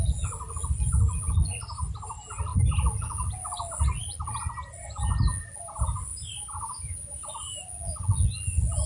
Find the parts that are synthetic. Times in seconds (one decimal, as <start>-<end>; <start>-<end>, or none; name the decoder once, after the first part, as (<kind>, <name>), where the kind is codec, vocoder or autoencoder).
6.1-7.3 (vocoder, BigVGAN v2)